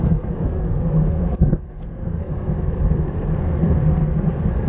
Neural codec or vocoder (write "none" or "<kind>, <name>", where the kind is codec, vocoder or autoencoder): codec, SNAC